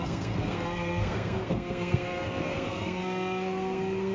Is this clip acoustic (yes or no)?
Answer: no